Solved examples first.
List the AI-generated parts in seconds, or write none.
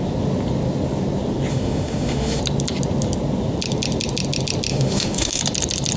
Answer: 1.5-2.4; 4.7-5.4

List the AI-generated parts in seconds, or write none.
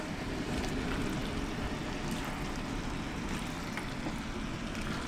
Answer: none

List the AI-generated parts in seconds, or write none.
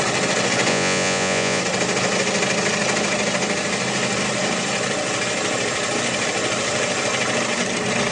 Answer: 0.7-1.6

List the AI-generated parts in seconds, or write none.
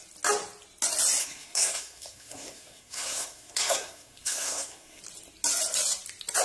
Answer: 1.2-5.0